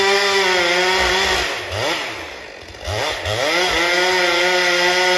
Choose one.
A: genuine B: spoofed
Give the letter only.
A